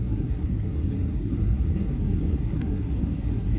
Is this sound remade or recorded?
remade